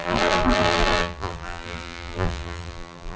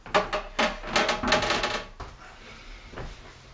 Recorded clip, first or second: second